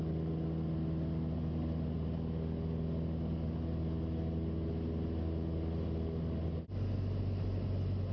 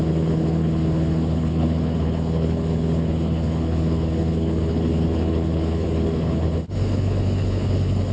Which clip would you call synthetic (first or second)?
second